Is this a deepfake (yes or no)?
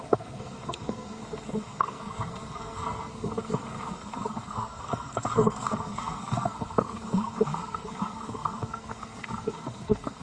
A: yes